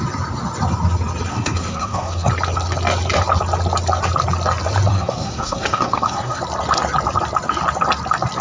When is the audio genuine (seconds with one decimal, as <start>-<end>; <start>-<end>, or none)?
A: 0.0-1.3; 2.3-4.9; 6.4-8.4